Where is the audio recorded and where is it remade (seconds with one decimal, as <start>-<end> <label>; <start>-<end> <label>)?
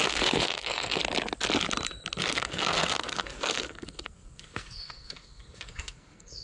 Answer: 0.0-1.0 remade; 1.0-2.2 recorded; 2.2-6.4 remade